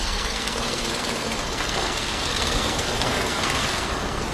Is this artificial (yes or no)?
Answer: yes